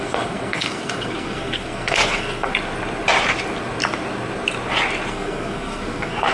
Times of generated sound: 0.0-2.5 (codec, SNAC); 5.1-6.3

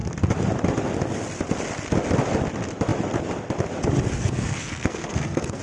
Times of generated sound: 4.2-5.6 (codec, SNAC)

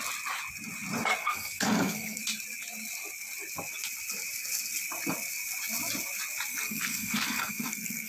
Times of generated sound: 1.2-2.2 (codec, SNAC); 6.5-8.1

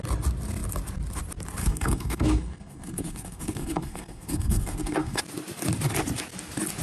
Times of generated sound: 1.6-5.2 (codec, SNAC)

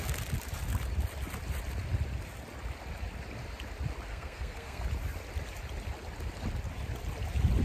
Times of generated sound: 4.1-4.8 (codec, SNAC)

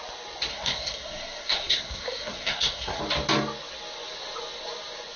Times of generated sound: 0.5-3.0 (codec, SNAC)

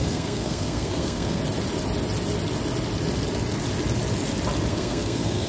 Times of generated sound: 0.0-1.4 (codec, SNAC); 4.7-5.5